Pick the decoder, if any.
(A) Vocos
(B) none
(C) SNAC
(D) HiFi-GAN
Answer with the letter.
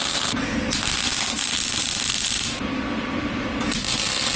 B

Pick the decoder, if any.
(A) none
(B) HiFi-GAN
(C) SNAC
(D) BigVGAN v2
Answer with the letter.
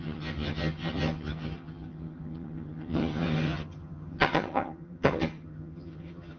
B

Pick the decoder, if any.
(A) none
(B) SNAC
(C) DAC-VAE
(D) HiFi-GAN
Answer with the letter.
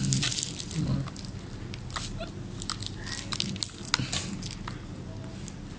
A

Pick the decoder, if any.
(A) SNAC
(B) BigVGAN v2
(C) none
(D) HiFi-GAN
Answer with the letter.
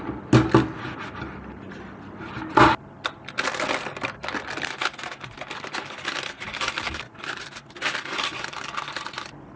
C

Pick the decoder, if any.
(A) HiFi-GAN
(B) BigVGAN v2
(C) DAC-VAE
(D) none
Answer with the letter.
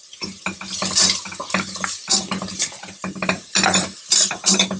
D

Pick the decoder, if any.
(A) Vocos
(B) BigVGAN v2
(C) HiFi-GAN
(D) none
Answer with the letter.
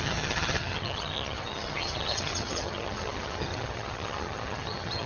C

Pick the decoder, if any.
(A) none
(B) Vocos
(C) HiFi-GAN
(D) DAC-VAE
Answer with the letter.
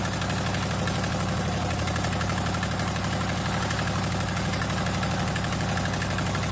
A